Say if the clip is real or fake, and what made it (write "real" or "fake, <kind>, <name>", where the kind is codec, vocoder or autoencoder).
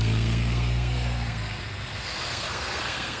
fake, codec, SNAC